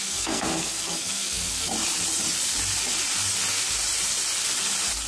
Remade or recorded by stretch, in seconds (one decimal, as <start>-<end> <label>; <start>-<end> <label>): 0.0-1.7 remade; 1.7-5.1 recorded